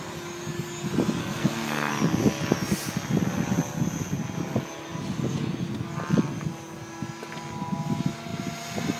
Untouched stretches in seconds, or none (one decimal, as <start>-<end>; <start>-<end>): 0.0-1.2; 1.9-9.0